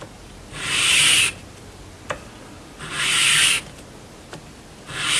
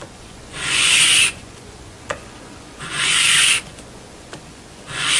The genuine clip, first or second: first